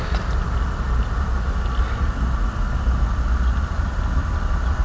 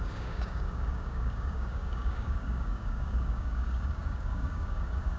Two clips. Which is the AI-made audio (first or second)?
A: second